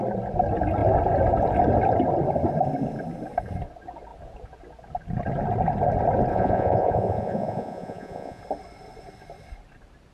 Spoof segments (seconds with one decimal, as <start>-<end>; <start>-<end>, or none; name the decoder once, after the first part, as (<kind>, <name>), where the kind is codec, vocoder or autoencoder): 6.3-8.4 (vocoder, Vocos)